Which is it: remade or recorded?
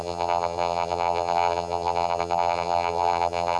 remade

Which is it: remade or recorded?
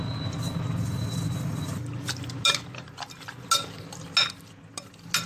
recorded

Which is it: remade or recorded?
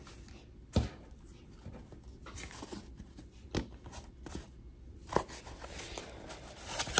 recorded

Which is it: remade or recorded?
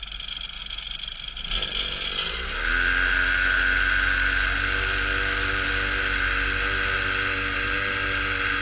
recorded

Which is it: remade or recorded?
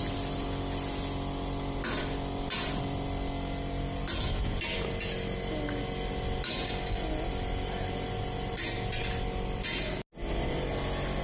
recorded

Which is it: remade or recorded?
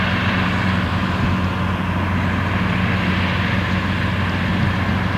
recorded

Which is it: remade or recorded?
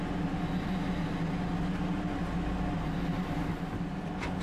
recorded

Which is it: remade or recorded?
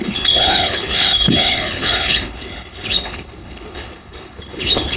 remade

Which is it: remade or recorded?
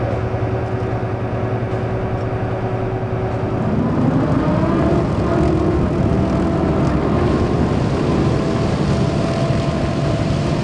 recorded